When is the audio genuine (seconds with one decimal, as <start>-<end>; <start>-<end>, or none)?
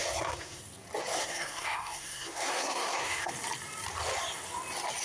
0.6-1.2; 3.3-5.0